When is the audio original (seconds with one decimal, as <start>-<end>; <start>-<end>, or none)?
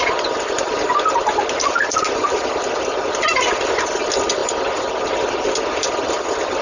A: 0.0-6.6